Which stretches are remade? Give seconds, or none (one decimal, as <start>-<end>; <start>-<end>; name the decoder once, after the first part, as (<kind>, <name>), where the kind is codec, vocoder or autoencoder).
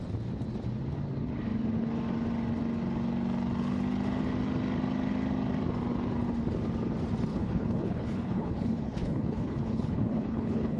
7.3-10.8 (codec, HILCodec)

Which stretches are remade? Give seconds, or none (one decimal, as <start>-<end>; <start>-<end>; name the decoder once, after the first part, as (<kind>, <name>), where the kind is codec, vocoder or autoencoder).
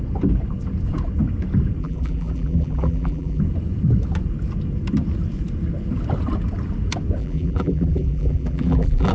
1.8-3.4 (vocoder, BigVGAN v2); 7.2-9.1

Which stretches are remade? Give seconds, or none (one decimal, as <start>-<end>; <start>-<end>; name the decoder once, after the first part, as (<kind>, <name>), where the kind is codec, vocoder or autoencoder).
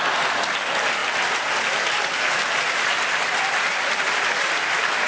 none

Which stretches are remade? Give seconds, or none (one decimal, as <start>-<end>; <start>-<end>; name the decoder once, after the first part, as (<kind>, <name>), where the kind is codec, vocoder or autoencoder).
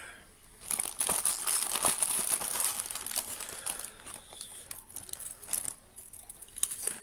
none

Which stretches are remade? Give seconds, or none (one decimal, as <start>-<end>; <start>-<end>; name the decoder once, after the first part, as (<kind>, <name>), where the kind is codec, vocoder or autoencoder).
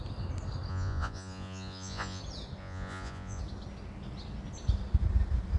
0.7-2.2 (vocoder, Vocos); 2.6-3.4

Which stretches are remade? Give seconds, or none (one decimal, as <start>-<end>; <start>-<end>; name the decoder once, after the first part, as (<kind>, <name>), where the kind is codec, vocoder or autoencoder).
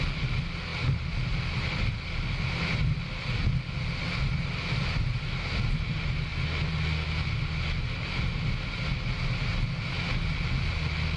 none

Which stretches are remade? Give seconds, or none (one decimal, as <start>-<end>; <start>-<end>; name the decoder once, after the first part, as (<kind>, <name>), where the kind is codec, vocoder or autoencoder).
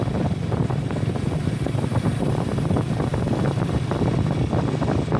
1.9-2.5 (vocoder, BigVGAN v2)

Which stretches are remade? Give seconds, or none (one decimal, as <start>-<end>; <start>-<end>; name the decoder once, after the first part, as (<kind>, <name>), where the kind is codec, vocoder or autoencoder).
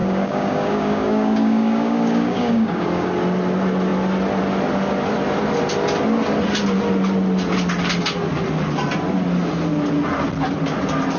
0.0-3.1 (codec, DAC)